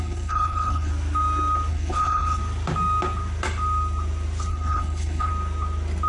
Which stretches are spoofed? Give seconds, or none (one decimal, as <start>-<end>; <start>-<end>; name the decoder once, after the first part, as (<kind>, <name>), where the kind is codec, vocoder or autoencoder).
0.0-0.9 (codec, HILCodec); 1.7-2.4; 4.5-5.3